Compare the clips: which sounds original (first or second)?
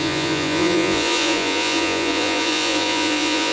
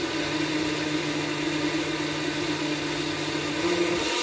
second